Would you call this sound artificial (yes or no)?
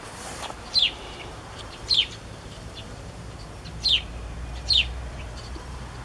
yes